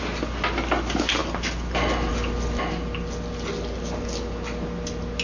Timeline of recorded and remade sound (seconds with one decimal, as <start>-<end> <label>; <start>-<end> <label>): 0.0-5.2 recorded

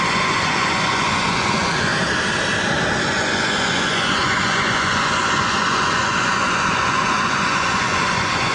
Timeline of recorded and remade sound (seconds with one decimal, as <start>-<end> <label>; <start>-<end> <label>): 0.0-1.9 remade; 1.9-3.0 recorded; 3.0-8.5 remade

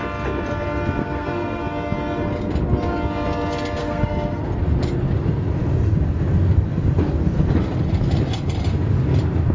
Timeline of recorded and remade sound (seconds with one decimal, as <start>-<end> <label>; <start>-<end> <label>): 0.0-1.0 recorded; 1.0-1.6 remade; 1.6-3.8 recorded; 3.8-4.5 remade; 4.5-9.5 recorded

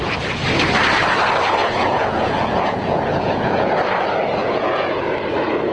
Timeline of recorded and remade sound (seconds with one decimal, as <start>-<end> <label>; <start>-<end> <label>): 0.0-1.6 recorded; 1.6-3.7 remade; 3.7-4.4 recorded; 4.4-5.0 remade; 5.0-5.7 recorded

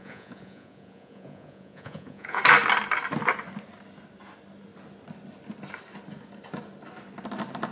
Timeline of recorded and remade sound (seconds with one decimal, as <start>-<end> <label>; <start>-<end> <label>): 0.0-2.4 remade; 2.4-7.7 recorded

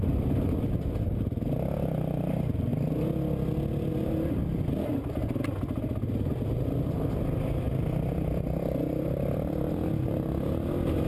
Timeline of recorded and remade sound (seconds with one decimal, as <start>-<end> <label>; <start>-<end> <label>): 0.0-11.1 recorded

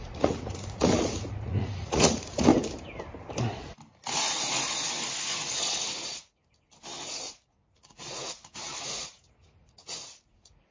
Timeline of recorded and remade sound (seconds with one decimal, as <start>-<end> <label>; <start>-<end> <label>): 0.0-2.5 remade; 2.5-4.1 recorded; 4.1-6.4 remade; 6.4-7.0 recorded; 7.0-10.7 remade

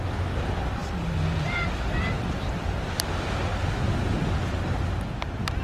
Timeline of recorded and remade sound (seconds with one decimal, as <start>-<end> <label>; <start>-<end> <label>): 0.0-5.6 recorded